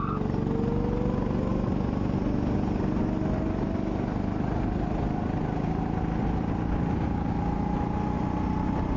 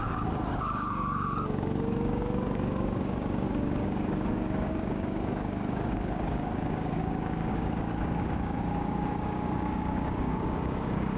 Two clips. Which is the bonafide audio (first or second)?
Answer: first